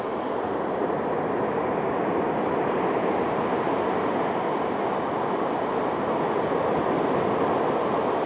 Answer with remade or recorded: recorded